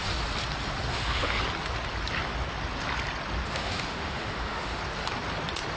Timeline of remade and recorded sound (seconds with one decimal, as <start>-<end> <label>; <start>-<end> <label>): 0.0-0.9 recorded; 0.9-1.4 remade; 1.4-3.4 recorded; 3.4-4.8 remade; 4.8-5.8 recorded